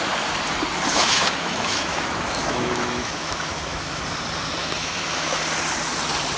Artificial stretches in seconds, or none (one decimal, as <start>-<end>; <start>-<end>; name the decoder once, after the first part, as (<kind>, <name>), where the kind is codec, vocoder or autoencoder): 0.9-4.0 (autoencoder, DAC-VAE); 4.6-5.4